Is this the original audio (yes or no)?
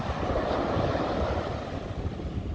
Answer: yes